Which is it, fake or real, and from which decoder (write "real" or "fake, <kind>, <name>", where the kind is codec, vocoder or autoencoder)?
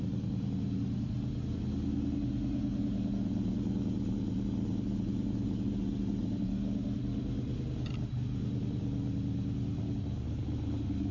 real